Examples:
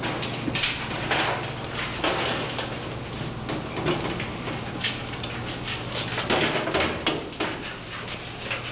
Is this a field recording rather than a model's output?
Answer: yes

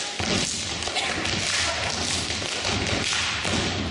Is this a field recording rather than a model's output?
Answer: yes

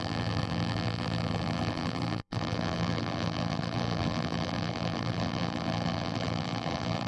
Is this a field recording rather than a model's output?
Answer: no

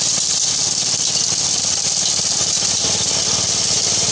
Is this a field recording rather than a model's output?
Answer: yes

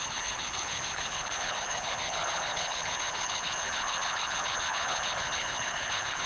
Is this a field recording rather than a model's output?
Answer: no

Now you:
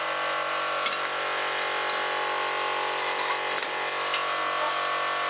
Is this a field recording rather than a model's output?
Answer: yes